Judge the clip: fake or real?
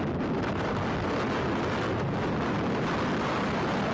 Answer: real